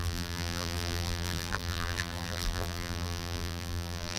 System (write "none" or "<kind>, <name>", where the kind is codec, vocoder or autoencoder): vocoder, BigVGAN v2